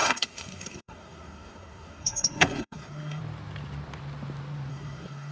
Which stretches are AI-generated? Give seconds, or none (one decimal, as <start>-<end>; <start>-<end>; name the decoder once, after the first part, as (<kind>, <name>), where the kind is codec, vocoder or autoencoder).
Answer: 0.0-3.2 (codec, SNAC); 4.7-5.3

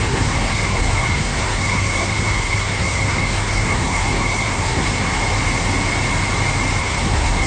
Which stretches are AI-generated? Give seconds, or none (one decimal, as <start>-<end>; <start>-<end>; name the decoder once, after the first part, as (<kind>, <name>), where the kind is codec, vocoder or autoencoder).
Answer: 0.0-5.2 (codec, SNAC); 6.8-7.5

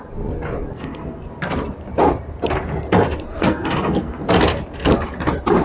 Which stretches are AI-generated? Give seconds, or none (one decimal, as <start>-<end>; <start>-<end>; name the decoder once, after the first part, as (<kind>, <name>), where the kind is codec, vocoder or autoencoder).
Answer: 0.7-1.3 (codec, SNAC); 3.3-4.3

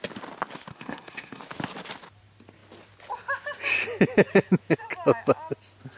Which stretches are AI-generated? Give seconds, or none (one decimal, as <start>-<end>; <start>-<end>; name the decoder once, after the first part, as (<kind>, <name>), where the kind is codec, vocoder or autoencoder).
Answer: 0.7-1.4 (codec, SNAC)

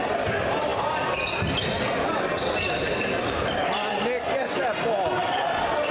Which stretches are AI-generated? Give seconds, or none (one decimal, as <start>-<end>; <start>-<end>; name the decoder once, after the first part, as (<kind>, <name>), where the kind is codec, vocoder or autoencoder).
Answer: none